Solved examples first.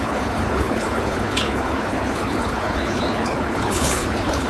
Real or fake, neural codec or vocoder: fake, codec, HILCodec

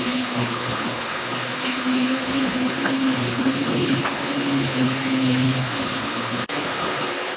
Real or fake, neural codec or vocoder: fake, codec, HILCodec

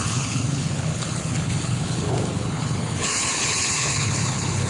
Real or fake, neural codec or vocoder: fake, codec, HILCodec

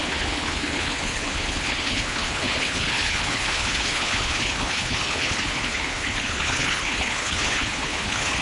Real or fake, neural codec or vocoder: fake, codec, HILCodec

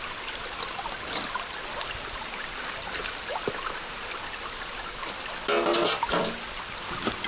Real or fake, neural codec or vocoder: real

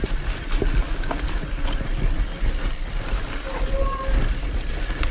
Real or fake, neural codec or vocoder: real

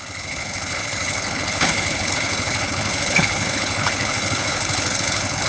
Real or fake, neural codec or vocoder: fake, codec, HILCodec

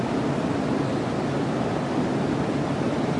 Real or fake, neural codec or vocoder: real